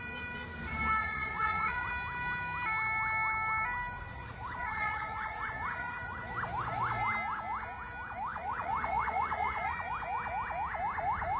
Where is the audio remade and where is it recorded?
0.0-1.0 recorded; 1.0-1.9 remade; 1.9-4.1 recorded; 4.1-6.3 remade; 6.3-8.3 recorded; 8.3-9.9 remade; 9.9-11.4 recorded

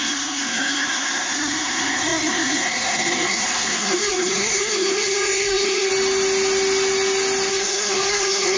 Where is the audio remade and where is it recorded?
0.0-5.9 remade; 5.9-7.5 recorded; 7.5-8.6 remade

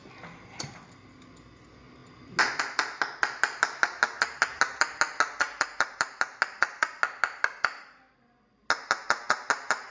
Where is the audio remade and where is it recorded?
0.0-9.9 recorded

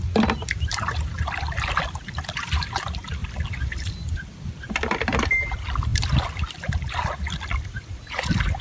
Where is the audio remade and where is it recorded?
0.0-3.2 recorded; 3.2-4.7 remade; 4.7-5.9 recorded; 5.9-6.9 remade; 6.9-8.6 recorded

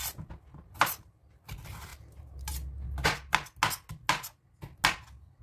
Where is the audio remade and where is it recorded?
0.0-1.9 remade; 1.9-5.4 recorded